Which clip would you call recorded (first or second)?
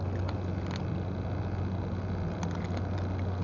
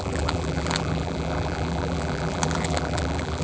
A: first